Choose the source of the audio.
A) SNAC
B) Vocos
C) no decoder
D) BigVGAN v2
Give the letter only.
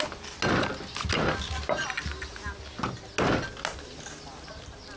C